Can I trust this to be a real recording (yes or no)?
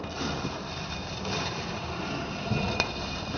yes